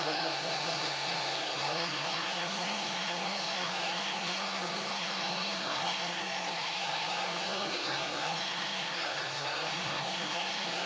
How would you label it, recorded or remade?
remade